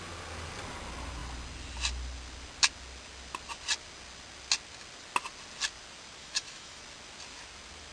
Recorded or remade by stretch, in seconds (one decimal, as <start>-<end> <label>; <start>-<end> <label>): 0.0-6.2 recorded; 6.2-6.8 remade; 6.8-7.9 recorded

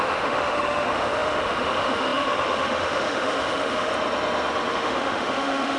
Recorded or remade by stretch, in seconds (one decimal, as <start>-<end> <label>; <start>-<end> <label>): 0.0-3.9 remade; 3.9-4.7 recorded; 4.7-5.8 remade

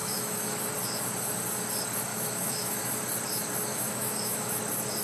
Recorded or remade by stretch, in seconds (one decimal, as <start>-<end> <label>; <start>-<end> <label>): 0.0-0.7 remade; 0.7-2.1 recorded; 2.1-2.8 remade; 2.8-3.7 recorded; 3.7-4.6 remade; 4.6-5.0 recorded

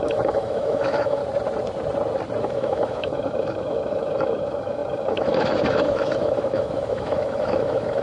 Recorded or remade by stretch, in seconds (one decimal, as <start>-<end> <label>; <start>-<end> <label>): 0.0-1.2 remade; 1.2-2.4 recorded; 2.4-8.0 remade

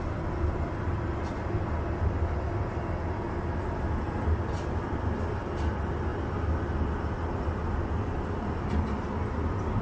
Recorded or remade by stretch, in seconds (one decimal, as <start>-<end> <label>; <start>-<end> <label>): 0.0-9.8 recorded

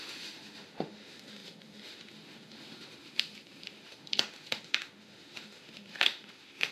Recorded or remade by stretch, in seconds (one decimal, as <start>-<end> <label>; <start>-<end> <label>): 0.0-6.7 remade

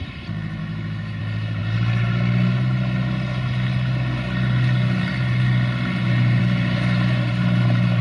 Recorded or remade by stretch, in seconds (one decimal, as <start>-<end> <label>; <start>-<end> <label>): 0.0-0.6 recorded; 0.6-1.2 remade; 1.2-8.0 recorded